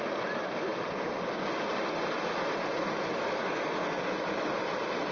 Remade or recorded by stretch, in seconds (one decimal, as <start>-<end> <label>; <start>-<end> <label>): 0.0-3.4 recorded; 3.4-4.0 remade; 4.0-5.1 recorded